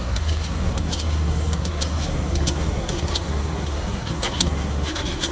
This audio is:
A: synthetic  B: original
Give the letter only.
A